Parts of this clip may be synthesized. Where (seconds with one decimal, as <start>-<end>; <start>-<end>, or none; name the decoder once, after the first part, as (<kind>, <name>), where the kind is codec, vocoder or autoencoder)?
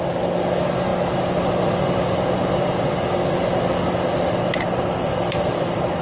none